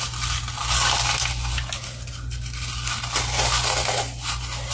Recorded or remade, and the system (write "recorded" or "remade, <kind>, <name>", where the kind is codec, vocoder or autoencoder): recorded